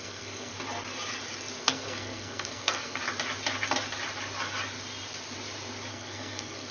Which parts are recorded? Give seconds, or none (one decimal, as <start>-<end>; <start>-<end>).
0.5-1.6; 3.0-5.9

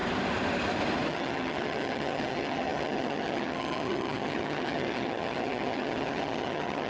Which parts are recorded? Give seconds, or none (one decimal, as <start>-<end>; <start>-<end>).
0.0-1.1

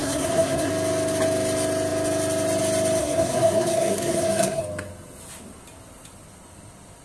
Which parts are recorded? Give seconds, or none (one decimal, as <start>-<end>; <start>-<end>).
0.7-3.0; 4.6-7.0

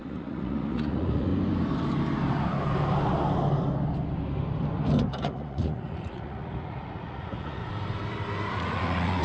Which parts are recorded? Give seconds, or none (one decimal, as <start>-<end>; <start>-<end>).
1.3-5.1; 7.6-8.5

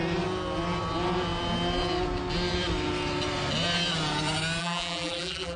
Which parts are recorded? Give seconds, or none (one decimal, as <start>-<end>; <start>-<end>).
0.0-4.6

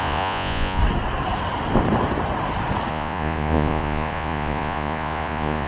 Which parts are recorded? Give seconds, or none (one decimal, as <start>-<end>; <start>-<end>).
0.8-2.9

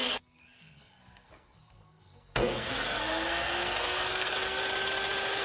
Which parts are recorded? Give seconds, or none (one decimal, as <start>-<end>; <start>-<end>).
4.6-5.4